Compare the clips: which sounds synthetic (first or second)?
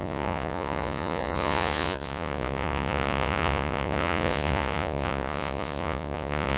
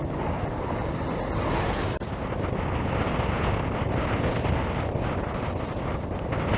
first